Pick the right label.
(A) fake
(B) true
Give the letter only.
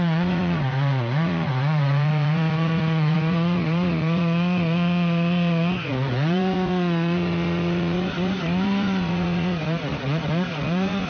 A